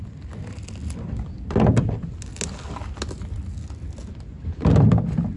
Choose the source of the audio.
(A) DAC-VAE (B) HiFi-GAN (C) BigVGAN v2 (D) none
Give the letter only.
D